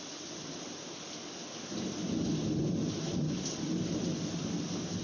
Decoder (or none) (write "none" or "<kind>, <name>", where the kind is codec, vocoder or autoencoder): none